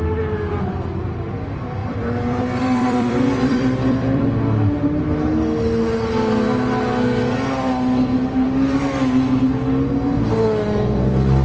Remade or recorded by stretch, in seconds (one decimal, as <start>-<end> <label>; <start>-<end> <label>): 0.0-1.8 recorded; 1.8-4.2 remade; 4.2-11.4 recorded